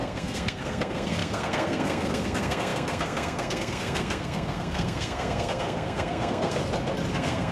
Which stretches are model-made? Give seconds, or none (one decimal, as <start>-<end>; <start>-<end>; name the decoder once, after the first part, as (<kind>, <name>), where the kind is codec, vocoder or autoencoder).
0.0-6.6 (codec, SNAC); 7.1-7.5

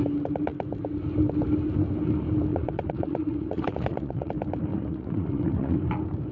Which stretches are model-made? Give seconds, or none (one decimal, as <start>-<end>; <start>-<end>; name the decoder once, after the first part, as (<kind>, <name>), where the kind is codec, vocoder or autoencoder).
2.5-4.3 (vocoder, Vocos); 4.7-5.8

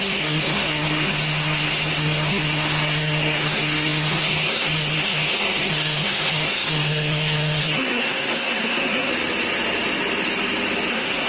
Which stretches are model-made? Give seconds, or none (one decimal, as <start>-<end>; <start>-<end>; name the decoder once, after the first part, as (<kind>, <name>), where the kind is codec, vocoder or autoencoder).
0.0-9.1 (codec, SNAC); 10.9-11.3